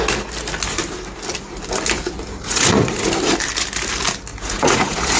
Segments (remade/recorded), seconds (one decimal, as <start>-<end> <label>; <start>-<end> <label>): 0.0-2.4 recorded; 2.4-3.1 remade; 3.1-4.3 recorded; 4.3-5.2 remade